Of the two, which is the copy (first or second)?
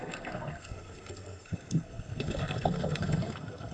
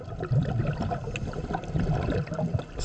first